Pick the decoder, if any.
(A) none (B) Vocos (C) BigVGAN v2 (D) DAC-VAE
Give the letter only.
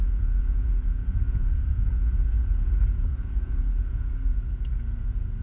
B